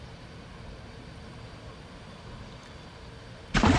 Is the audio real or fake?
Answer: real